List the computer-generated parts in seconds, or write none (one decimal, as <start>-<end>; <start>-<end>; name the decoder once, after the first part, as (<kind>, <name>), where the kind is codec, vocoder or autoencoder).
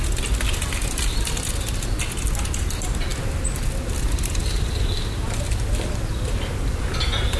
none